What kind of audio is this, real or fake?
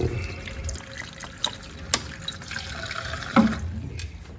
real